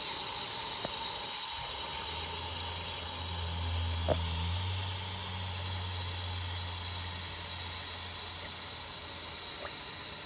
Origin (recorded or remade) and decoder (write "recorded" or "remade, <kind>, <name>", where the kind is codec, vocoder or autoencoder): recorded